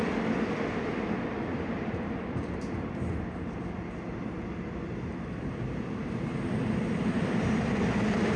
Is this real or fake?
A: real